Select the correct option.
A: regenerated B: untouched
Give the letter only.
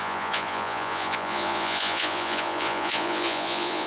A